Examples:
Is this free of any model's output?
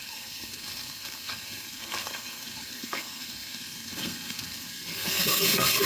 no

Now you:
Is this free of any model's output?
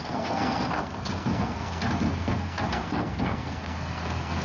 no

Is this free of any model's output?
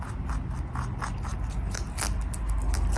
yes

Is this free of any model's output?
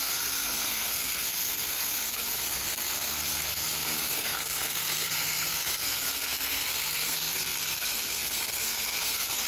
no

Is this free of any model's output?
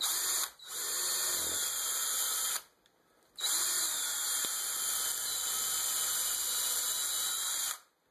yes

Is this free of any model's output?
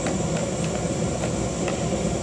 yes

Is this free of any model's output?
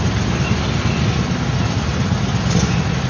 yes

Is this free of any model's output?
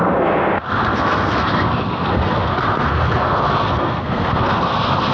no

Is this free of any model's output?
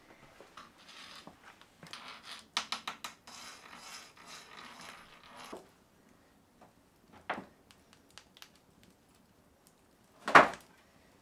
yes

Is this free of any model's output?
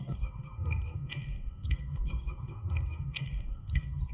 no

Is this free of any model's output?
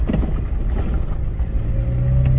yes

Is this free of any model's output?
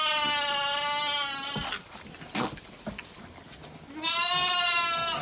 yes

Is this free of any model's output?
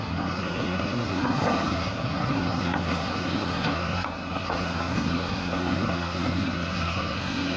no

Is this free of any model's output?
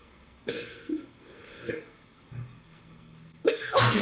no